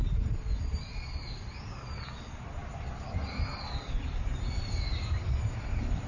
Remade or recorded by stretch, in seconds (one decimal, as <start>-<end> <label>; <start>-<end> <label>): 0.0-6.1 recorded